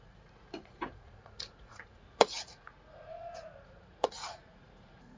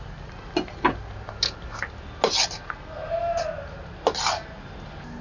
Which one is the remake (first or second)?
first